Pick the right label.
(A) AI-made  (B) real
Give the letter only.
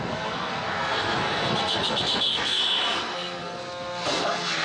A